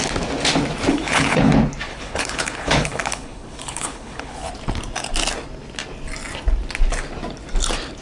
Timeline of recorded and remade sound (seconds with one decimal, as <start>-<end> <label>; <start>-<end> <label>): 0.0-0.9 recorded; 0.9-1.5 remade; 1.5-1.9 recorded; 1.9-4.5 remade; 4.5-8.0 recorded